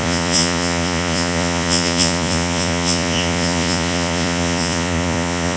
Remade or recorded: remade